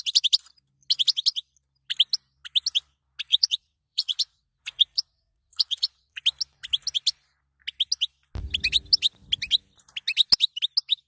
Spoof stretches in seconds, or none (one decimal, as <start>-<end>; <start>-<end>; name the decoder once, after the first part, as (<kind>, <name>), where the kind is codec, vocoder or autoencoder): 3.3-6.2 (vocoder, Vocos)